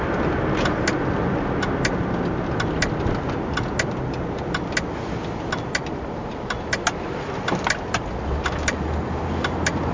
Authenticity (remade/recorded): recorded